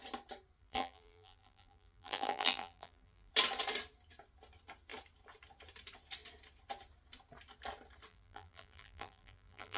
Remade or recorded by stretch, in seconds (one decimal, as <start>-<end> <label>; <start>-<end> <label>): 0.0-0.6 recorded; 0.6-3.3 remade; 3.3-8.1 recorded; 8.1-9.8 remade